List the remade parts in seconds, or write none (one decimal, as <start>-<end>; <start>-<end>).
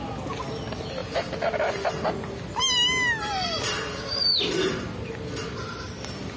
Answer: none